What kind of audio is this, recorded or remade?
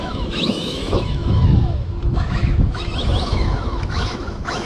remade